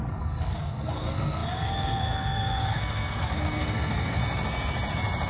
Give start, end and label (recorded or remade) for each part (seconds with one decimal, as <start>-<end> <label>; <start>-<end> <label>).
0.0-4.2 remade; 4.2-5.3 recorded